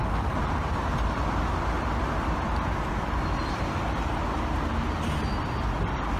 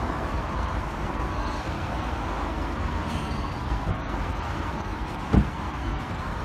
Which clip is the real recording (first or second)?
first